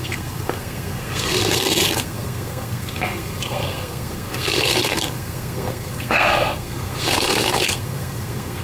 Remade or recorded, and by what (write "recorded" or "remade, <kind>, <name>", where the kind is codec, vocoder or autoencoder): remade, codec, SNAC